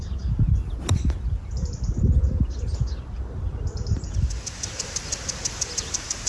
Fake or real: real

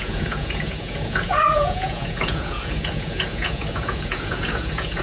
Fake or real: fake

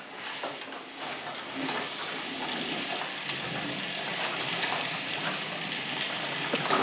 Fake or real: real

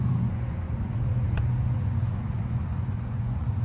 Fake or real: fake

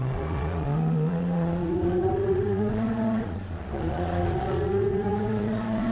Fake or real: fake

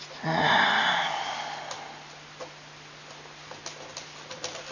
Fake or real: real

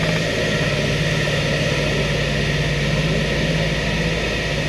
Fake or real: real